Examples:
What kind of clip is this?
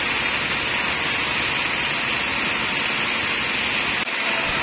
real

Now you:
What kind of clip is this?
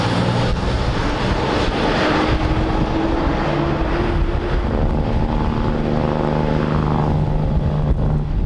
real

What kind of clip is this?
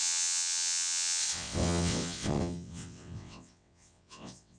fake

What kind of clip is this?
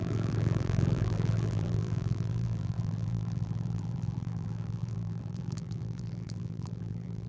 fake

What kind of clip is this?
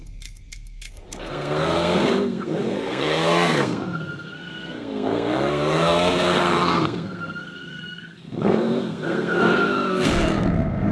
fake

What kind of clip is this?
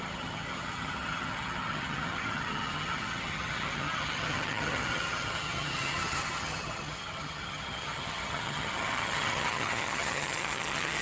fake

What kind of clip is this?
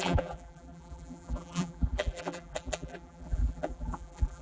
fake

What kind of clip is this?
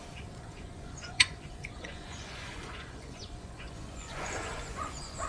fake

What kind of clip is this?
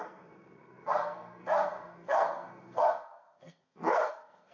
fake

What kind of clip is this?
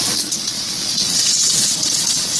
fake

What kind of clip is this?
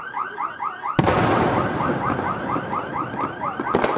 real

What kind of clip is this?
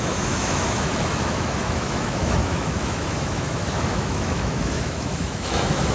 fake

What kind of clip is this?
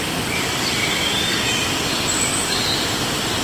fake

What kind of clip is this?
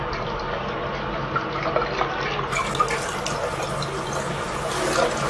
real